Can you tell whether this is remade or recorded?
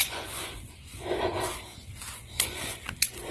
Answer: remade